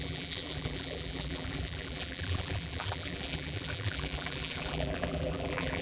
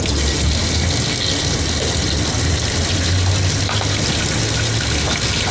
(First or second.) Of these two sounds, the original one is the second